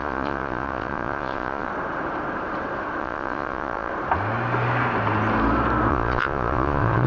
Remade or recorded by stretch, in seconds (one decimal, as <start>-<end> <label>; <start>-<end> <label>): 0.0-1.7 remade; 1.7-3.0 recorded; 3.0-3.9 remade; 3.9-5.9 recorded; 5.9-7.1 remade